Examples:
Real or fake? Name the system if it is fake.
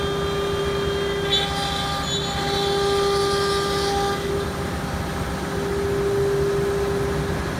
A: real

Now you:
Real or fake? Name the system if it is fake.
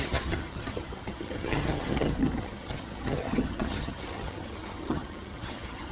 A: fake, vocoder, HiFi-GAN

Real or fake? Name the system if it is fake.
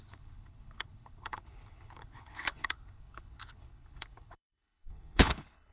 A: fake, codec, HILCodec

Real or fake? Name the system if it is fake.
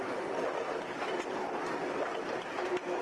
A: real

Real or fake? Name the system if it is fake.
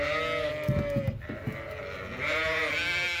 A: real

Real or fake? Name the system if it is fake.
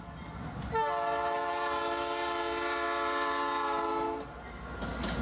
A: real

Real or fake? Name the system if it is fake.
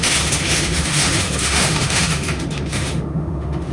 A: fake, autoencoder, DAC-VAE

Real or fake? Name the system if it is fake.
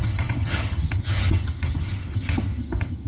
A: fake, vocoder, HiFi-GAN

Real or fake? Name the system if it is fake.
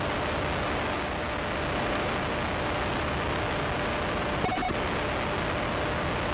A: real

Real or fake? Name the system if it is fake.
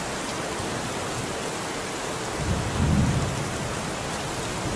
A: real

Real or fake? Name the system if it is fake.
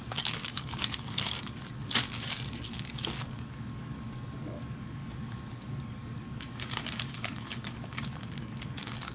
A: fake, codec, DAC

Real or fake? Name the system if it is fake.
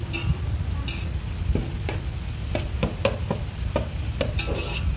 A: real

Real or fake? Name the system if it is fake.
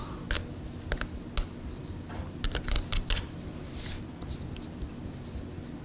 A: real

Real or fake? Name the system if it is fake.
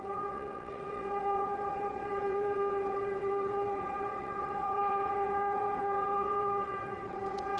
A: fake, vocoder, WaveNeXt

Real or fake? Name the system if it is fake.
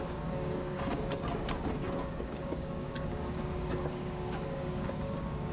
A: fake, codec, DAC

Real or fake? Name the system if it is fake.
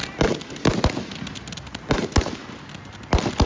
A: real